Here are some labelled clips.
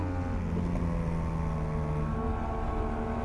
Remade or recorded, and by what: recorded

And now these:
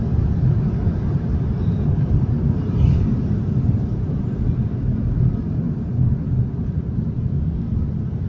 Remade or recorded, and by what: recorded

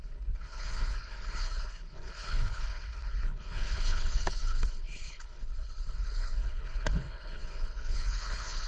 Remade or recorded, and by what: remade, codec, HILCodec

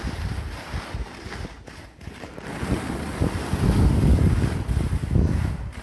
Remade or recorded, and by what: recorded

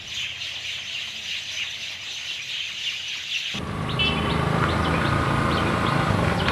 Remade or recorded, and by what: recorded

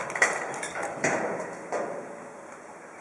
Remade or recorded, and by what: recorded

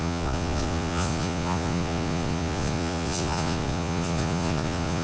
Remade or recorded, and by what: remade, vocoder, Vocos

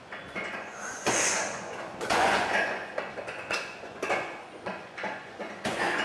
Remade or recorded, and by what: remade, vocoder, Vocos